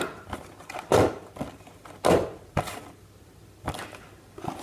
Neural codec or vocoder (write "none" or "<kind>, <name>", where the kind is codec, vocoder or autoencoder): none